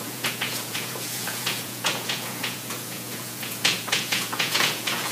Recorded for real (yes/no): no